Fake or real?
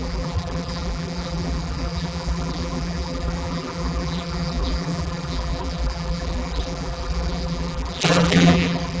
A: fake